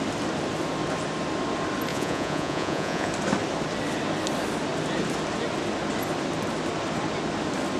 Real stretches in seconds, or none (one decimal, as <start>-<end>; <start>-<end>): 0.0-1.9; 3.1-7.8